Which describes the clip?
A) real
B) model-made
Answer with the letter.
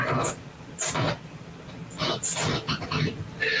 A